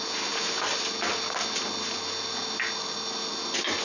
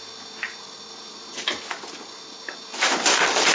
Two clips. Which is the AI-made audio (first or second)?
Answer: second